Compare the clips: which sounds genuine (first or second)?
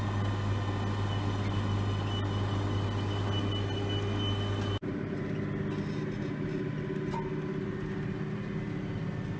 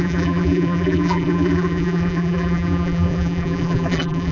first